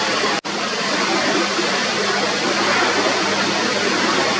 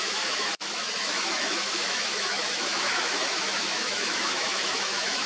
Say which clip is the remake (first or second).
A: second